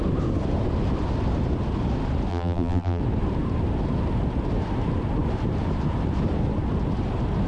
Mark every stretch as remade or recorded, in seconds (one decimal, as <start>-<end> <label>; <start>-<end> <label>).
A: 0.0-2.3 recorded; 2.3-3.0 remade; 3.0-7.5 recorded